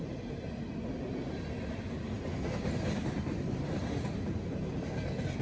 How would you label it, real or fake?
real